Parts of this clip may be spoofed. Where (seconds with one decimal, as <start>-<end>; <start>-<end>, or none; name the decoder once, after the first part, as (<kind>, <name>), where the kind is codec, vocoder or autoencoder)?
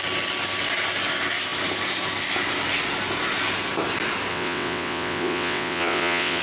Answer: 4.3-6.4 (vocoder, WaveNeXt)